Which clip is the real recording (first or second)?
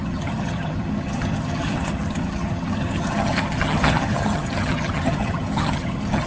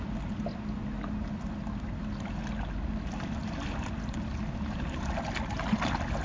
second